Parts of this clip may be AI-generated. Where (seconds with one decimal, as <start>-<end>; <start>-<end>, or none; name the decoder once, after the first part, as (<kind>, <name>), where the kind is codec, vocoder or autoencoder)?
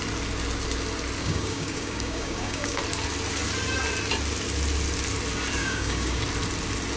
1.2-2.8 (codec, DAC); 5.6-6.2